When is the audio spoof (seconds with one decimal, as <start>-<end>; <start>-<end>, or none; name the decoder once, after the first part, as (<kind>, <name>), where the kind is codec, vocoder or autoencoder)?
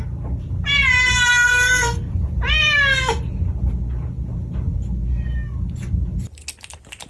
1.5-2.1 (codec, SNAC)